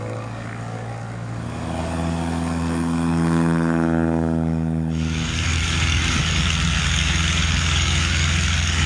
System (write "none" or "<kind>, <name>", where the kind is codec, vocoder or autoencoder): codec, DAC